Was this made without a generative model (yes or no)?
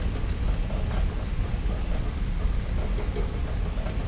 yes